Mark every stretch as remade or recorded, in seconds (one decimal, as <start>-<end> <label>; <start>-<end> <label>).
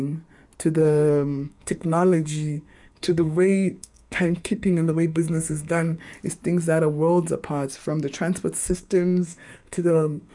0.0-0.8 recorded; 0.8-6.0 remade; 6.0-8.6 recorded; 8.6-10.3 remade